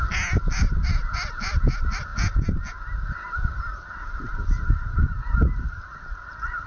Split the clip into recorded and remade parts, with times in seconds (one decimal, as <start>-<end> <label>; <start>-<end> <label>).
0.0-6.7 recorded